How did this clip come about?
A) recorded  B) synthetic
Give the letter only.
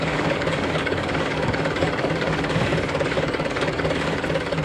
B